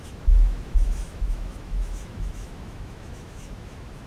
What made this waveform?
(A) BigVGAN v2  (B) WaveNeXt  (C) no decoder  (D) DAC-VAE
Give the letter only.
D